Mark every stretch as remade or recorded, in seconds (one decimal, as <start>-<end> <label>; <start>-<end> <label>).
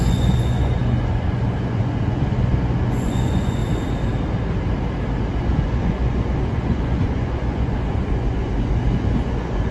0.0-3.6 remade; 3.6-5.4 recorded; 5.4-9.7 remade